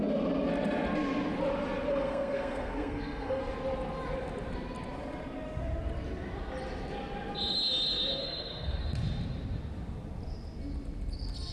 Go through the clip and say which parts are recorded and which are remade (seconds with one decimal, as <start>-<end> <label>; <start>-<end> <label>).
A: 0.0-1.9 recorded; 1.9-3.4 remade; 3.4-8.2 recorded; 8.2-8.8 remade; 8.8-11.5 recorded